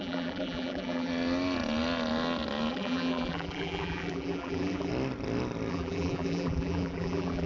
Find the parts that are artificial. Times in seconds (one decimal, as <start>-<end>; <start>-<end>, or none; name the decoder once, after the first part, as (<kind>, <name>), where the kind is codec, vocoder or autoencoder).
0.0-1.1 (vocoder, BigVGAN v2); 2.7-4.9; 5.7-7.5